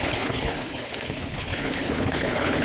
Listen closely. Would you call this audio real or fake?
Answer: fake